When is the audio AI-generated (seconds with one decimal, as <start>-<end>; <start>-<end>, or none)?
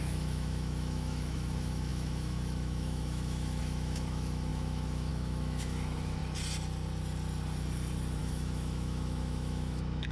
0.0-6.2; 8.2-10.1